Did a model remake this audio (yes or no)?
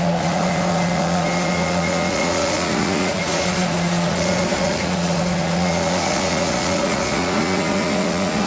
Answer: yes